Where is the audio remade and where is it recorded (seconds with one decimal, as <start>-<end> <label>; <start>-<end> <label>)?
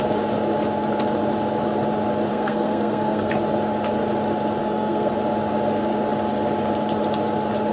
0.0-2.3 recorded; 2.3-3.3 remade; 3.3-4.6 recorded; 4.6-5.1 remade; 5.1-7.7 recorded